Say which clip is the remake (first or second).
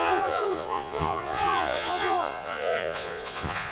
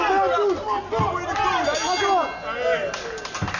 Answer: first